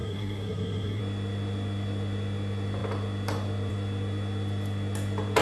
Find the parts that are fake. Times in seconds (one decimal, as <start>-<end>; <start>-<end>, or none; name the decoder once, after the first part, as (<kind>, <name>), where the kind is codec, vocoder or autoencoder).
0.0-1.0 (codec, SNAC)